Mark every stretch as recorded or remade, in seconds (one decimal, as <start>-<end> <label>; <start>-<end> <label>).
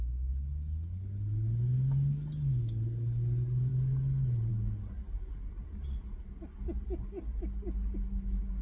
0.0-8.6 recorded